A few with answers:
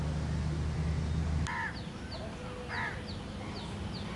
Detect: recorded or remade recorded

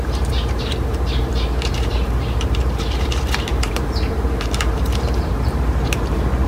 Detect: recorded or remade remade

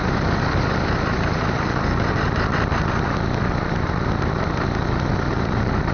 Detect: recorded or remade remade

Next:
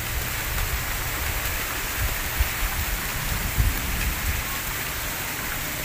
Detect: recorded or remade recorded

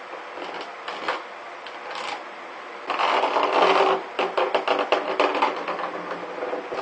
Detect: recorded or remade recorded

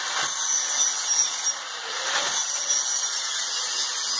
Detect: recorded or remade recorded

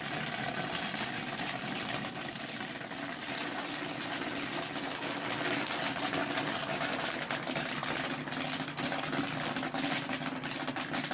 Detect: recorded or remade recorded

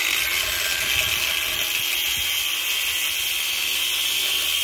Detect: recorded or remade recorded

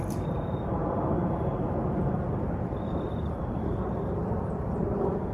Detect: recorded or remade remade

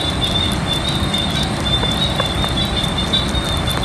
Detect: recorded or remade remade